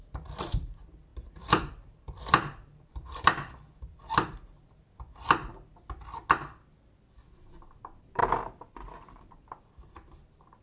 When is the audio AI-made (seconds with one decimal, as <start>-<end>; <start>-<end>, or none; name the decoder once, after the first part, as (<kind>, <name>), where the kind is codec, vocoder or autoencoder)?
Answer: 1.1-4.8 (vocoder, BigVGAN v2); 8.2-10.6